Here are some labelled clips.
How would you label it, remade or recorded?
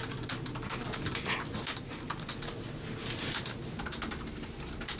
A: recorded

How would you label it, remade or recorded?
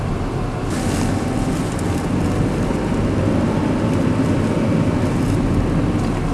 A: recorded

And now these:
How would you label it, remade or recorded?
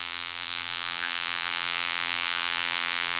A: remade